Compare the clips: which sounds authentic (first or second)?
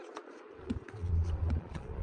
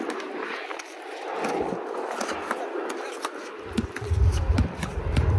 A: second